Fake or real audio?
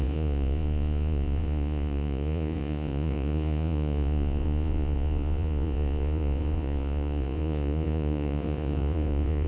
fake